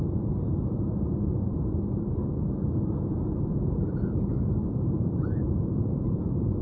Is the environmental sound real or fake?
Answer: fake